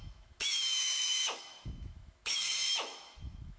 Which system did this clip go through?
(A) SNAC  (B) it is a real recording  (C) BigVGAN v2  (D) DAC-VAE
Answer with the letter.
D